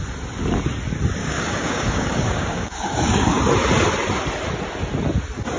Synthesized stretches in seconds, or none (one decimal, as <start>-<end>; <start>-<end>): 1.2-3.4